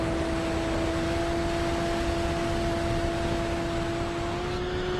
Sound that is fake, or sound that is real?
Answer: real